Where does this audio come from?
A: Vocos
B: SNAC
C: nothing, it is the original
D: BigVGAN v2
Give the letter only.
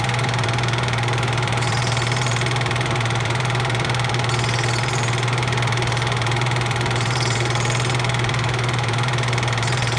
D